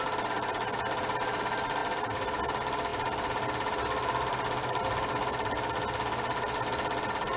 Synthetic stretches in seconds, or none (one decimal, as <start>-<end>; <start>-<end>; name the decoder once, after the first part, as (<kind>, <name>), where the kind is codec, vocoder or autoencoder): none